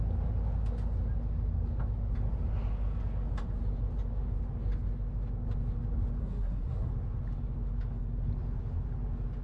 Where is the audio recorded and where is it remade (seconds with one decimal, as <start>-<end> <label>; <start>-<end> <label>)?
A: 0.0-6.2 recorded; 6.2-6.9 remade; 6.9-9.4 recorded

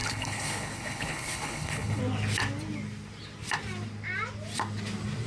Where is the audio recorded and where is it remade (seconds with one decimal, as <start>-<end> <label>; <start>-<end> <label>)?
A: 0.0-2.0 remade; 2.0-5.3 recorded

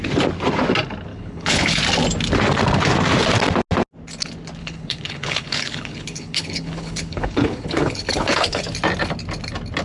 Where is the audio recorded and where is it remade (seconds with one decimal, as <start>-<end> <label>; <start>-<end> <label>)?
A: 0.0-1.1 recorded; 1.1-1.8 remade; 1.8-4.6 recorded; 4.6-8.6 remade; 8.6-9.8 recorded

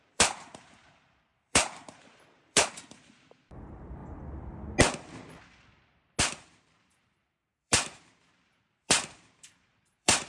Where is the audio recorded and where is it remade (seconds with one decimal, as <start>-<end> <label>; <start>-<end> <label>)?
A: 0.0-4.0 remade; 4.0-6.2 recorded; 6.2-10.3 remade